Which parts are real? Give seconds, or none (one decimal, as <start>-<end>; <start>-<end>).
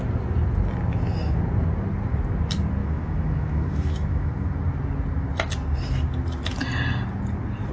0.0-2.8; 4.3-7.7